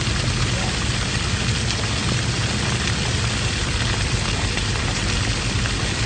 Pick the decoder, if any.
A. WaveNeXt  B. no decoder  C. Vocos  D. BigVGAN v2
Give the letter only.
B